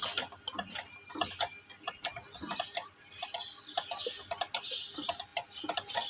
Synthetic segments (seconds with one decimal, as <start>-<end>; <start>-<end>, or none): none